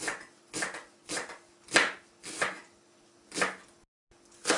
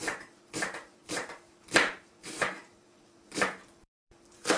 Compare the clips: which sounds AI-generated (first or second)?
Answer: second